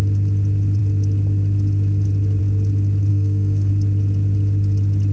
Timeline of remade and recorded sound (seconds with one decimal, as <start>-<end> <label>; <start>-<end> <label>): 0.0-3.1 recorded; 3.1-3.7 remade; 3.7-5.1 recorded